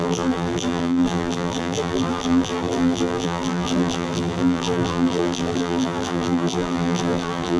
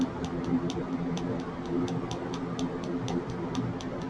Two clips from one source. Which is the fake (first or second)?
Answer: first